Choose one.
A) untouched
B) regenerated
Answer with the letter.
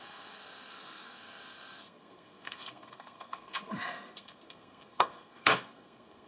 B